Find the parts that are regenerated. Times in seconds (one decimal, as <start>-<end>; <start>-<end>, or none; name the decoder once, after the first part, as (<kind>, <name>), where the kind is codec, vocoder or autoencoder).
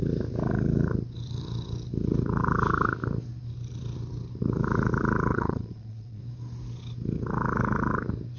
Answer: 5.3-6.2 (vocoder, Vocos)